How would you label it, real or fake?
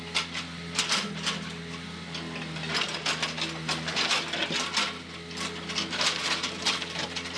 real